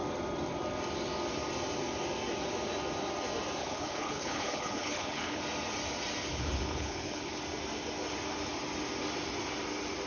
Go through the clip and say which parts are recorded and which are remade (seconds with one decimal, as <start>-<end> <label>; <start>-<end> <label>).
0.0-3.6 recorded; 3.6-5.4 remade; 5.4-6.3 recorded; 6.3-7.4 remade; 7.4-10.1 recorded